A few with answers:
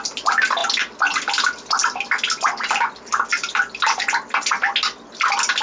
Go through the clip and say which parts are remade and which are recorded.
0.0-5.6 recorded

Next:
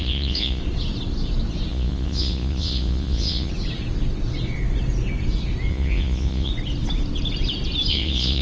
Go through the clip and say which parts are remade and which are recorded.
0.0-0.6 remade; 0.6-1.7 recorded; 1.7-3.5 remade; 3.5-5.7 recorded; 5.7-6.5 remade; 6.5-7.9 recorded; 7.9-8.4 remade

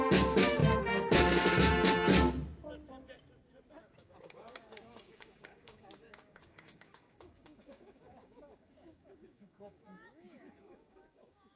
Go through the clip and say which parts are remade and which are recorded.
0.0-1.7 remade; 1.7-3.8 recorded; 3.8-11.6 remade

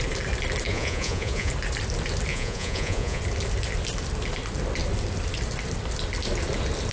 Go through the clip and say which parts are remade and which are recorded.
0.0-0.7 recorded; 0.7-1.5 remade; 1.5-2.3 recorded; 2.3-3.2 remade; 3.2-6.9 recorded

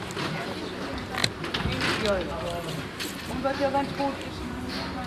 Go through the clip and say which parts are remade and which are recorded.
0.0-5.1 recorded

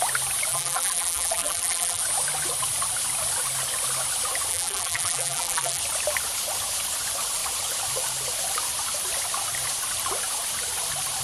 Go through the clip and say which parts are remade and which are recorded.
0.0-0.5 recorded; 0.5-2.0 remade; 2.0-4.5 recorded; 4.5-5.8 remade; 5.8-11.2 recorded